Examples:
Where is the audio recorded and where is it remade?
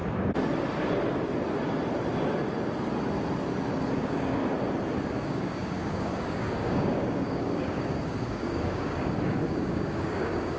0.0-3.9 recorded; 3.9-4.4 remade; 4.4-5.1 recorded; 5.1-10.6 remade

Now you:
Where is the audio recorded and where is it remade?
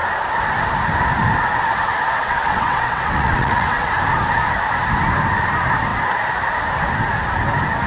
0.0-2.2 recorded; 2.2-3.9 remade; 3.9-7.9 recorded